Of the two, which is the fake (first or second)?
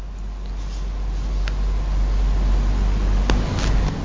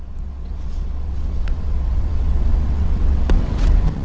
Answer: second